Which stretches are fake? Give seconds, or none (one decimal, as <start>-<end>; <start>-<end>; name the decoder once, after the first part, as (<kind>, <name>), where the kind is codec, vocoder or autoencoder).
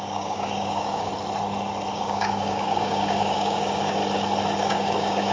0.0-1.1 (codec, DAC); 1.9-4.0; 4.6-5.3